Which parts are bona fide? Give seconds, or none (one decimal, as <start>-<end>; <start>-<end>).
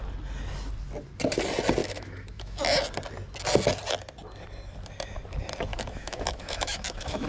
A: 0.0-1.8; 2.6-5.7